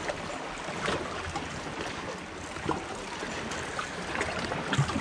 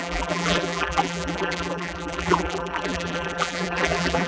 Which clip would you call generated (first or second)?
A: second